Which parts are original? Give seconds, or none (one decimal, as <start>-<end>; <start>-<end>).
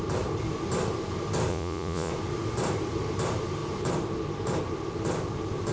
0.0-1.5; 2.1-5.7